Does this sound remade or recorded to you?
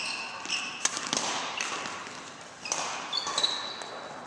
recorded